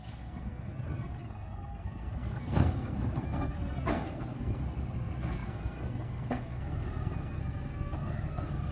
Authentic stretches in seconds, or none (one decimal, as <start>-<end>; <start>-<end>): none